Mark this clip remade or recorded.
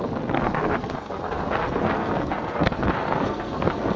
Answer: remade